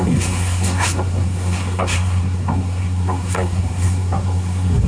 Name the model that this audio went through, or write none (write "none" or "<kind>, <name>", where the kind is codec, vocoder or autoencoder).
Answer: codec, SNAC